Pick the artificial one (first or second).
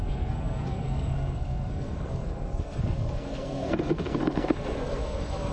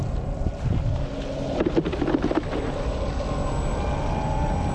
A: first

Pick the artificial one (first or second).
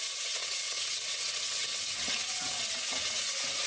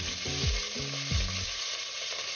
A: first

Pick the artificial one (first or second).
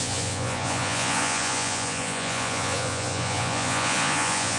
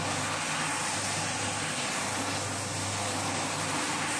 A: first